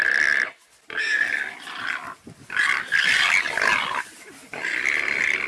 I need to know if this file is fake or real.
real